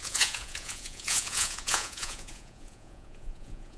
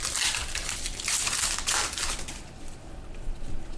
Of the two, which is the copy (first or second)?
first